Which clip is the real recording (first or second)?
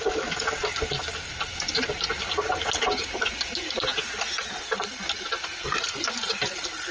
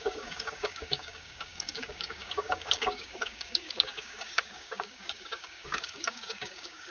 first